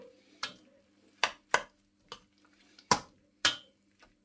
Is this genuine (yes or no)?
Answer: yes